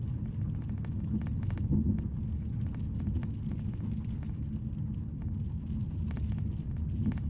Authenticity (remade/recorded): recorded